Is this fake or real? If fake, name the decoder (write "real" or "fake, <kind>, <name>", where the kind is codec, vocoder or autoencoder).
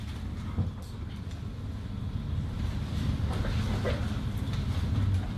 real